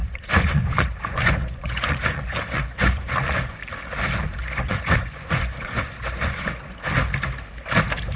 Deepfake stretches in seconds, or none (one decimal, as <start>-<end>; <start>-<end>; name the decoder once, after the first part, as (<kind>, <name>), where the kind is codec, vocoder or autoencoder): 0.0-3.6 (vocoder, Vocos); 4.4-6.5